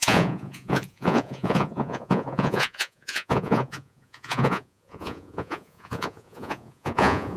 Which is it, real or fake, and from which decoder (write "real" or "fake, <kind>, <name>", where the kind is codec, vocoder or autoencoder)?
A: fake, vocoder, Vocos